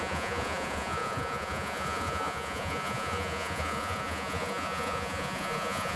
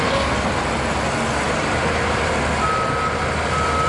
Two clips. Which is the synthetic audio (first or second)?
first